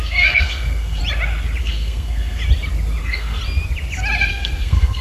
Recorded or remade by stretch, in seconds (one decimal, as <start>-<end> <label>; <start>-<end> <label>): 0.0-1.0 remade; 1.0-1.6 recorded; 1.6-2.4 remade; 2.4-3.0 recorded; 3.0-3.4 remade; 3.4-4.3 recorded; 4.3-5.0 remade